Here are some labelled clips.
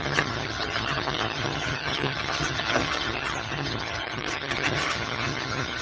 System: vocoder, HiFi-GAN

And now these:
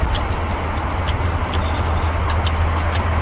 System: none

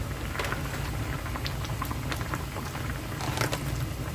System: none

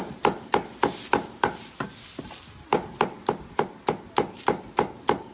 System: none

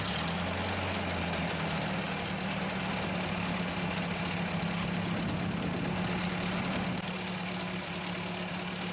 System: none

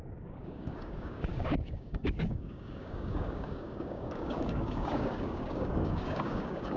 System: codec, DAC